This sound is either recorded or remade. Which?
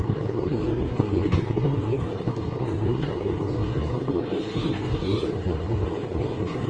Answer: remade